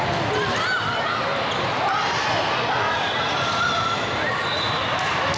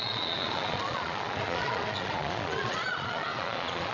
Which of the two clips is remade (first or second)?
second